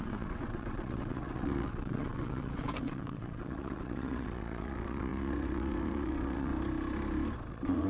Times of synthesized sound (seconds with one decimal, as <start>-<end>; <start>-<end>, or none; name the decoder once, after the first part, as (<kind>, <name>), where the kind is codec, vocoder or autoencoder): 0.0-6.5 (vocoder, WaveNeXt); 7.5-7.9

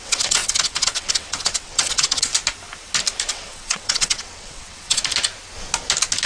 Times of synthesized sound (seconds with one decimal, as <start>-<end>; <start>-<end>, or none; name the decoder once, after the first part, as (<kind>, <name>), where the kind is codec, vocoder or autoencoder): 0.0-2.3 (vocoder, WaveNeXt); 3.3-5.0

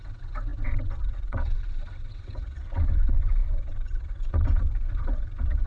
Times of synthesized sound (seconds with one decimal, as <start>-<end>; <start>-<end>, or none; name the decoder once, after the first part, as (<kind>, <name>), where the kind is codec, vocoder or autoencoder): 0.0-5.7 (vocoder, WaveNeXt)

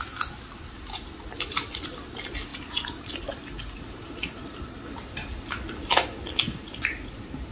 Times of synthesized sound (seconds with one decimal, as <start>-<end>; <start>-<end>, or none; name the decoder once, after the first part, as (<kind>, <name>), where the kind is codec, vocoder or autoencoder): none

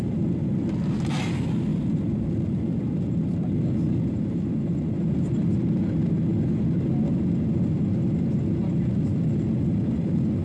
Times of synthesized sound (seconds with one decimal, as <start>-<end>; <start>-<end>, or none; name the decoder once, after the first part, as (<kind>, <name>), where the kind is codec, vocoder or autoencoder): none

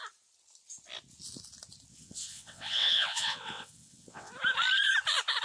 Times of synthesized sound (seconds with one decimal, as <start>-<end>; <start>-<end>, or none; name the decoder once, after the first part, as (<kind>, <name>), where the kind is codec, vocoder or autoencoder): 1.9-4.3 (vocoder, WaveNeXt)